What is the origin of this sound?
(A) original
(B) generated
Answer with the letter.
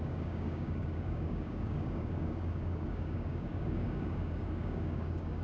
B